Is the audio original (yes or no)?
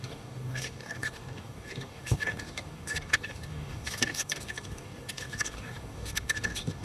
no